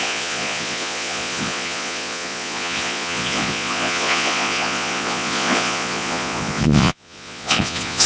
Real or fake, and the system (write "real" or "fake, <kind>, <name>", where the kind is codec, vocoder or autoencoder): fake, vocoder, Vocos